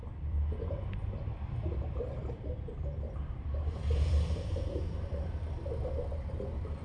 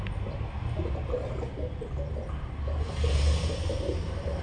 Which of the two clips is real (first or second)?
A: second